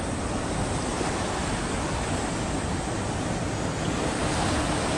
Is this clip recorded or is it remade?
recorded